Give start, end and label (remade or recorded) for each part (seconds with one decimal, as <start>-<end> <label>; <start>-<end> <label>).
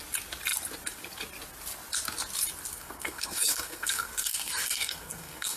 0.0-2.7 recorded; 2.7-5.6 remade